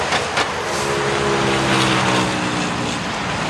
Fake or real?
real